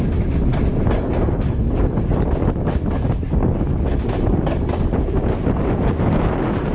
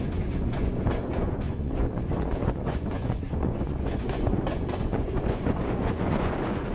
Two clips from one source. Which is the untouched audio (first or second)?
first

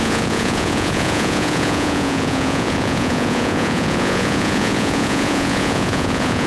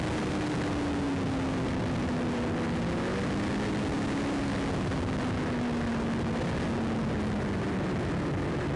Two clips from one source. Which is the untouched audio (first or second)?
second